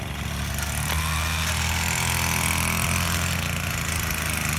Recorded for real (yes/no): yes